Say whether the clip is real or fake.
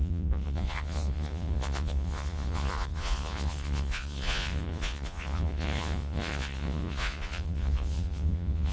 fake